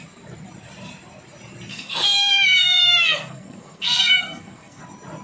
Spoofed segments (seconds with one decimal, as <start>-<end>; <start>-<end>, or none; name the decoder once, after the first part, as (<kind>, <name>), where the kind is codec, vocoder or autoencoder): 1.7-4.8 (codec, SNAC)